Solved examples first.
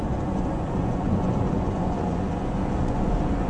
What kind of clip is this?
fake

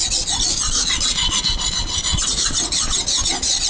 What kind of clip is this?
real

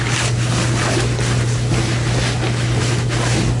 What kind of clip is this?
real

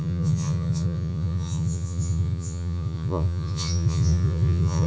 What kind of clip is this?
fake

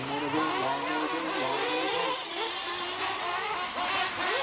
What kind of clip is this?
real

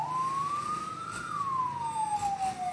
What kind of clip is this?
real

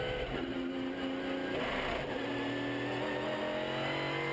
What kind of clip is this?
real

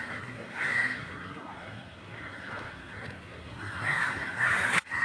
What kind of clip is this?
fake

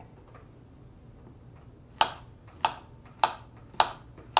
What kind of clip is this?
real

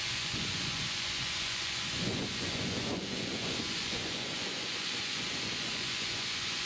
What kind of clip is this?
fake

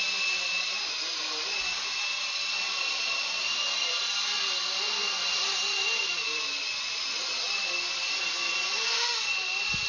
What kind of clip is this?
real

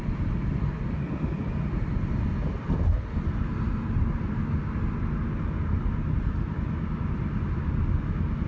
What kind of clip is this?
real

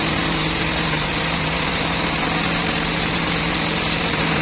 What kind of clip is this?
fake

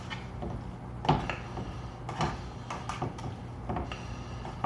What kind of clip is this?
real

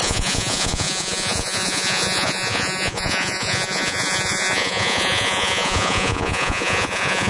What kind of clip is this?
fake